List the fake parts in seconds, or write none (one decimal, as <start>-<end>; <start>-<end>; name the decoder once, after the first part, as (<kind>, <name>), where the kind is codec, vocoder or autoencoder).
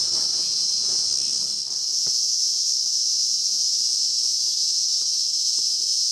0.0-1.1 (vocoder, Vocos); 2.0-6.1